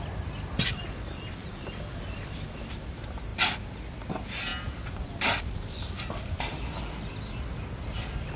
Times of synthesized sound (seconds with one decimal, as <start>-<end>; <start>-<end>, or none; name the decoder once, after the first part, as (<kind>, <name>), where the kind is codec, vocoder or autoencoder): none